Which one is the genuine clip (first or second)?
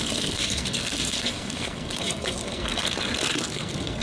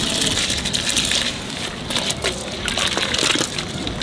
second